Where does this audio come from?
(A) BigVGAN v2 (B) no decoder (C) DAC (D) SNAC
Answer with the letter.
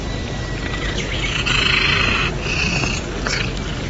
B